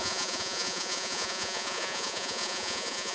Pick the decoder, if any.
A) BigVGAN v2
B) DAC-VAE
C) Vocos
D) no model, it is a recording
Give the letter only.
C